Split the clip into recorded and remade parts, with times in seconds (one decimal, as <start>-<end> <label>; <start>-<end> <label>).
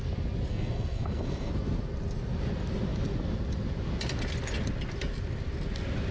0.0-0.5 recorded; 0.5-1.5 remade; 1.5-6.1 recorded